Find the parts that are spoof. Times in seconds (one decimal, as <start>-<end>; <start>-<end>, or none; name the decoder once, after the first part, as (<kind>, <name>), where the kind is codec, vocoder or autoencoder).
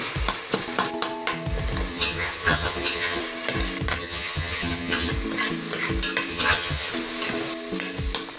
1.9-3.2 (vocoder, HiFi-GAN); 3.9-5.1; 6.3-6.9